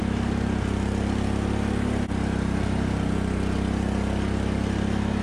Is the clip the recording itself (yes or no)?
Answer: yes